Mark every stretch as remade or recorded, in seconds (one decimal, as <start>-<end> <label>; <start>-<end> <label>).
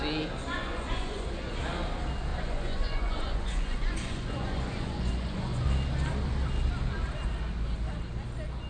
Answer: 0.0-0.4 recorded; 0.4-1.5 remade; 1.5-2.3 recorded; 2.3-5.7 remade; 5.7-8.7 recorded